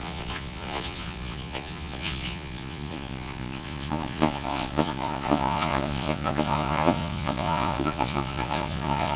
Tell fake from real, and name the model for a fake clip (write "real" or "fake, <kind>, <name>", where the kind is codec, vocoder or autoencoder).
fake, vocoder, Vocos